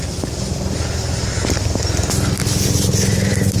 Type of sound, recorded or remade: recorded